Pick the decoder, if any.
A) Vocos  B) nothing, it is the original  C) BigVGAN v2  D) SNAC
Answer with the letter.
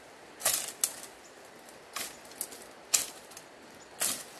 B